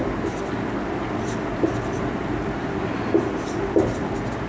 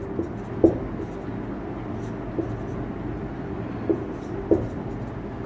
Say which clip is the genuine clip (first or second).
second